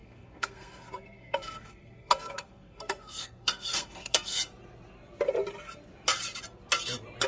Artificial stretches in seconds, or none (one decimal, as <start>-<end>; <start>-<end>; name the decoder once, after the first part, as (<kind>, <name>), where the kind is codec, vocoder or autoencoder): 0.0-4.4 (codec, SNAC)